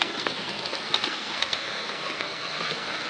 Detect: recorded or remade remade